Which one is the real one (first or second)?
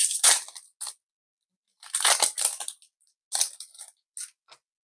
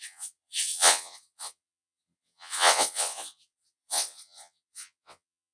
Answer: first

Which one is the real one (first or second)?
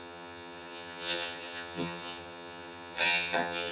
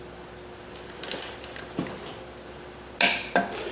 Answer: second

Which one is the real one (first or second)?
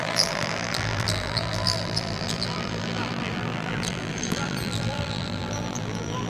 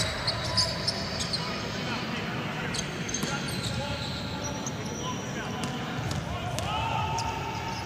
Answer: second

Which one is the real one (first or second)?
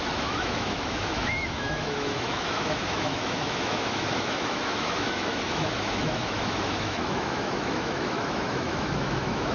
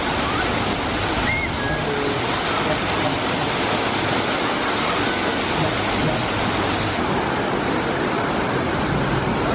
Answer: second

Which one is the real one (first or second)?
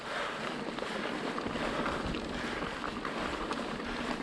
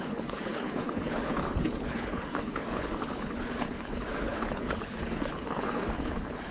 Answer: first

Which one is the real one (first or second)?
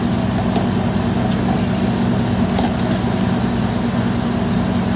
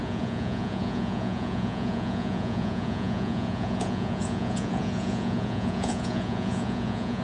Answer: first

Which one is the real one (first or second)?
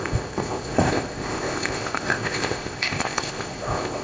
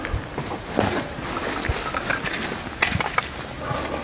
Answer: second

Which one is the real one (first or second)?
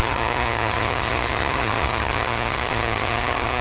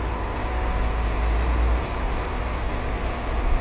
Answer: second